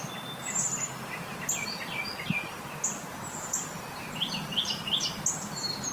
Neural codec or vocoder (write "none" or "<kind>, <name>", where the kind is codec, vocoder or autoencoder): none